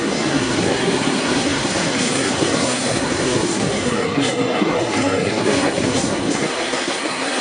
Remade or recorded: remade